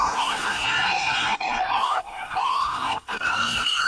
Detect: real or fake fake